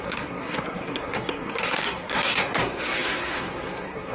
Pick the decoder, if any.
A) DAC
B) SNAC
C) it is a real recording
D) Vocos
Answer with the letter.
B